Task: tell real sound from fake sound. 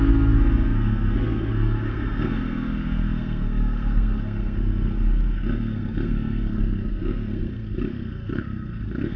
fake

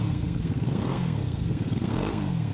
fake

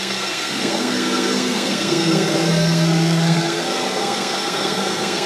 fake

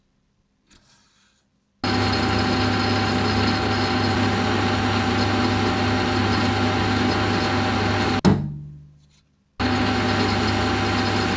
real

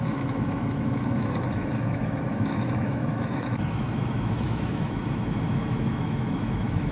fake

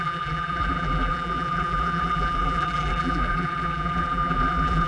fake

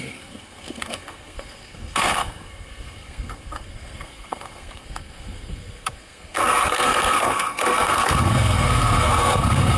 fake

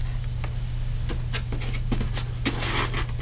real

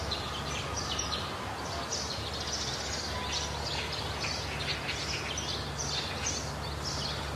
real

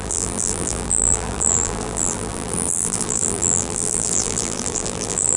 fake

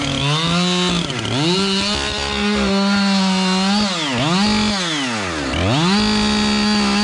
real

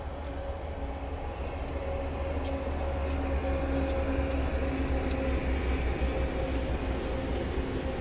real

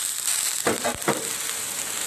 fake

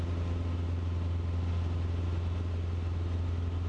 real